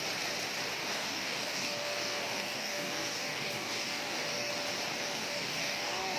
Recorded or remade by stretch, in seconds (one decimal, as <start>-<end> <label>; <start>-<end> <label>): 0.0-0.8 recorded; 0.8-4.5 remade; 4.5-5.0 recorded; 5.0-6.2 remade